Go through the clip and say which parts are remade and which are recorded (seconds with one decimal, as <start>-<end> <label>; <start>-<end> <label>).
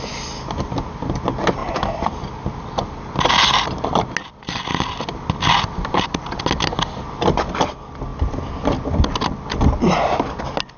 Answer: 0.0-10.8 recorded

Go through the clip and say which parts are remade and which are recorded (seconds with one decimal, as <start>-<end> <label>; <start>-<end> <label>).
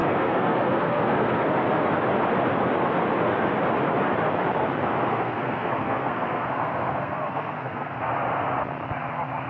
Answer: 0.0-1.5 remade; 1.5-5.1 recorded; 5.1-8.1 remade; 8.1-9.5 recorded